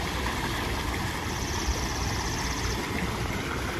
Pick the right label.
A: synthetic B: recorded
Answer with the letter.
A